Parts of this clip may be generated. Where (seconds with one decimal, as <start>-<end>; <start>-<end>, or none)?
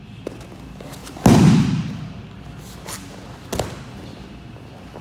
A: none